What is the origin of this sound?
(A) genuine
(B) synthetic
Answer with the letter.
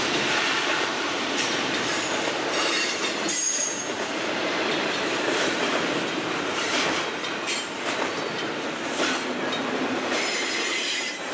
B